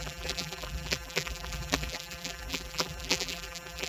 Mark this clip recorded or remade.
remade